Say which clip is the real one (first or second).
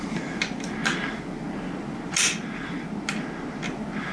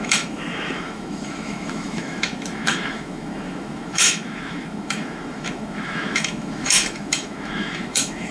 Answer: first